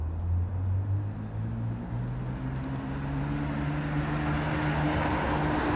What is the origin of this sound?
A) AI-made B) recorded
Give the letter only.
B